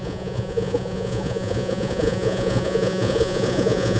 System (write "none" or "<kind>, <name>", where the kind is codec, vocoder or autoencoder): vocoder, Vocos